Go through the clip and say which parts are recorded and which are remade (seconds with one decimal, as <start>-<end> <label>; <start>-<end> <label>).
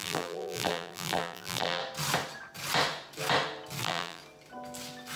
0.0-1.8 remade; 1.8-3.8 recorded; 3.8-4.2 remade; 4.2-5.2 recorded